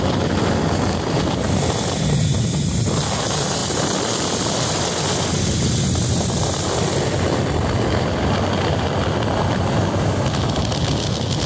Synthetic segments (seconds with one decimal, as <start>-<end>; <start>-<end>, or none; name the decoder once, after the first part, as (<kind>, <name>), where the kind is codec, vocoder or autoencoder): 3.6-8.4 (vocoder, BigVGAN v2)